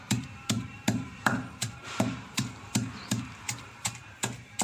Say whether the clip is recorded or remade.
remade